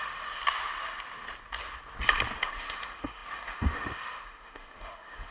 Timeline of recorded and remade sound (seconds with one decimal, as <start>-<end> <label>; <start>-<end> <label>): 0.0-0.4 remade; 0.4-2.4 recorded; 2.4-5.3 remade

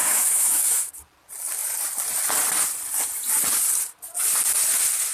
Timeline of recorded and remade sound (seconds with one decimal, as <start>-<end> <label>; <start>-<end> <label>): 0.0-0.9 remade; 0.9-5.1 recorded

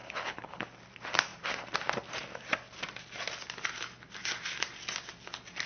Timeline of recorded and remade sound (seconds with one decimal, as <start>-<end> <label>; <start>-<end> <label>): 0.0-0.6 remade; 0.6-5.7 recorded

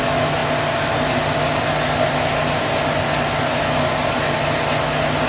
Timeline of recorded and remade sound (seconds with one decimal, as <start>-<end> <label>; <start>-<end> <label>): 0.0-5.3 recorded